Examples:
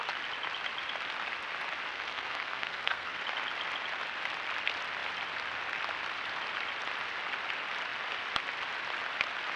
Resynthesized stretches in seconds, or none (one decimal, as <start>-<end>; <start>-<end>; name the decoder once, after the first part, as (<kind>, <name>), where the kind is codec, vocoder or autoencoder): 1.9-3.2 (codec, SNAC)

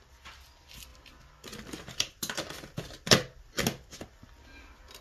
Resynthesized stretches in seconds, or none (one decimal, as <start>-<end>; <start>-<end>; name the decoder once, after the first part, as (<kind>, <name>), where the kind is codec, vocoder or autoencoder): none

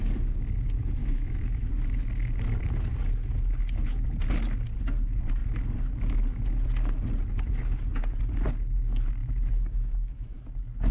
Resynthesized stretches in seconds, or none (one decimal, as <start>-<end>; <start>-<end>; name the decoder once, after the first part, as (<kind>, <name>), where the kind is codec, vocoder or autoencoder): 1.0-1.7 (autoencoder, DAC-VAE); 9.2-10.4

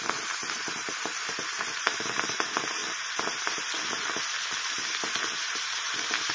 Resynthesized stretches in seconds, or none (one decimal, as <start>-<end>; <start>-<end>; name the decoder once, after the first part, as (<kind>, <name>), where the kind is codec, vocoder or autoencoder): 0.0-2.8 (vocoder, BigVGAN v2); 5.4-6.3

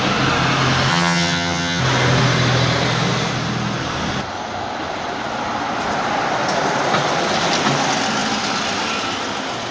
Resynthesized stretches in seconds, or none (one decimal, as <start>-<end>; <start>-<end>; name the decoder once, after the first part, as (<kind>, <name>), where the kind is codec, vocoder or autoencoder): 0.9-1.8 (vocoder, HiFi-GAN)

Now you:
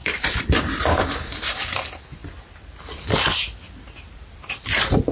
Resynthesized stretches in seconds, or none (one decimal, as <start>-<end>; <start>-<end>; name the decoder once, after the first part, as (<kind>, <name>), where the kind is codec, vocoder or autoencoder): 0.0-1.6 (vocoder, BigVGAN v2)